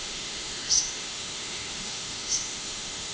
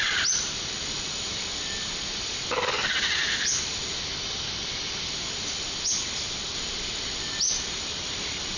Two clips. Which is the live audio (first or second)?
second